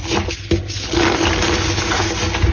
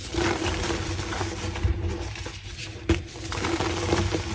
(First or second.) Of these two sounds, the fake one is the second